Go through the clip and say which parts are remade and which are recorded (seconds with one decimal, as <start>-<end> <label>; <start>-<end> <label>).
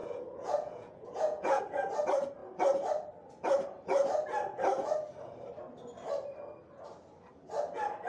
0.0-1.6 remade; 1.6-8.1 recorded